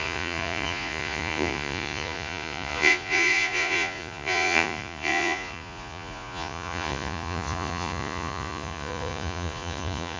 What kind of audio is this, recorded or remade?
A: remade